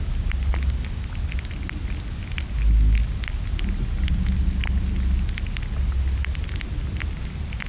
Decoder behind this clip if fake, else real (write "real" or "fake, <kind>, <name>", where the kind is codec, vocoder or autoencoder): real